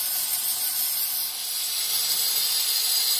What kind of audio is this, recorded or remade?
recorded